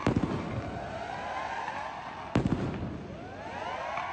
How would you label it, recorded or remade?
recorded